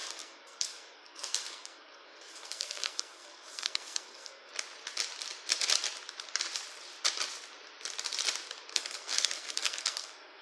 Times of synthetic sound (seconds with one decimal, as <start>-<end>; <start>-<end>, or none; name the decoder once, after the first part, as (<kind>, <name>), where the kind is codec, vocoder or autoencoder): 0.0-4.5 (codec, SNAC); 8.7-10.4